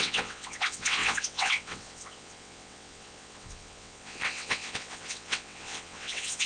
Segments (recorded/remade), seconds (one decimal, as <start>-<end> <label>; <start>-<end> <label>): 0.0-6.5 remade